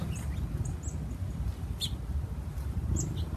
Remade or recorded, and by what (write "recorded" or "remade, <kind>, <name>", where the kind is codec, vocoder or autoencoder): recorded